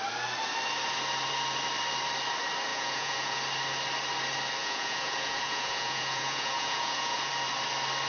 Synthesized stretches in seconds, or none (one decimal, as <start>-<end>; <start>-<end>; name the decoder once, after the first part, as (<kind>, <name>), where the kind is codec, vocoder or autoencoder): 2.7-3.4 (vocoder, Vocos); 4.6-7.3